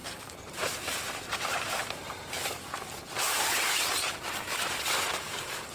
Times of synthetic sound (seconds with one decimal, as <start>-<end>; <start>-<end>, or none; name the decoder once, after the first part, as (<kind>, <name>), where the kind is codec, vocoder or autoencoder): 0.0-1.8 (vocoder, BigVGAN v2); 5.2-5.7

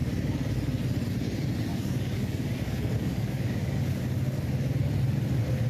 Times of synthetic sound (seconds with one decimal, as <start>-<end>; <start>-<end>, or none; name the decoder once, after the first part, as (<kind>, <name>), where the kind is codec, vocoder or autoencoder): 1.7-4.0 (codec, DAC)

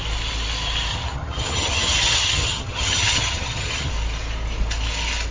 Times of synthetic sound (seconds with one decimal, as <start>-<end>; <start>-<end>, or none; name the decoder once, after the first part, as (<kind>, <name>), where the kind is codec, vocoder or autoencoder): 0.9-3.9 (vocoder, HiFi-GAN)

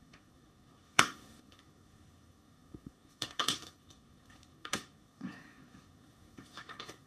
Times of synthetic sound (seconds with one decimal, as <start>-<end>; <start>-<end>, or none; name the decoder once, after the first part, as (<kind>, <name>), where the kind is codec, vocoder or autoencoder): 0.0-7.1 (codec, SNAC)